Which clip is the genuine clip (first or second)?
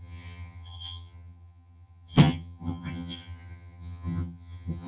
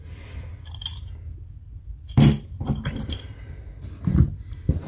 second